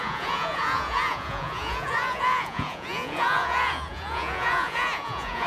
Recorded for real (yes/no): no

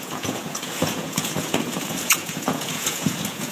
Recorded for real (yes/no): no